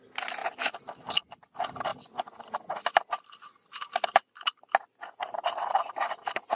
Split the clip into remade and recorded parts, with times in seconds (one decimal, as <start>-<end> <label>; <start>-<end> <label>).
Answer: 0.0-1.9 recorded; 1.9-5.9 remade; 5.9-6.6 recorded